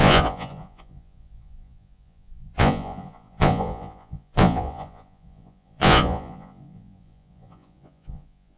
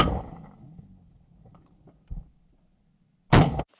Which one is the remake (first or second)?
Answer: first